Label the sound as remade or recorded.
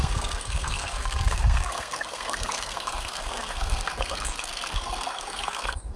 remade